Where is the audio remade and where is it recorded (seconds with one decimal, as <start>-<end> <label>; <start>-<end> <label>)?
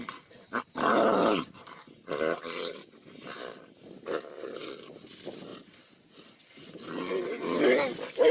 0.0-8.3 recorded